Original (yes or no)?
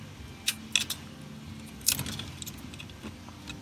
yes